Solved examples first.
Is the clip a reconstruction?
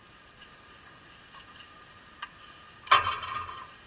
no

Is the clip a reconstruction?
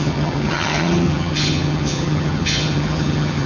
yes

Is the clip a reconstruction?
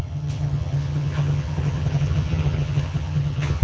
yes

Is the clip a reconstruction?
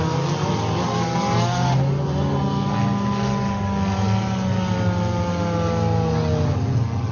no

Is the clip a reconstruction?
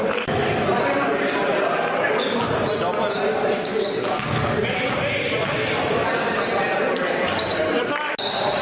no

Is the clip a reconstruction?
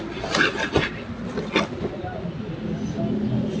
no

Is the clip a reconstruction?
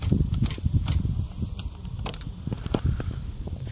no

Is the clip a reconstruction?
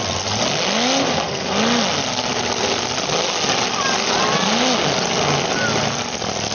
no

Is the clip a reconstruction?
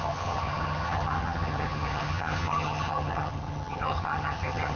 yes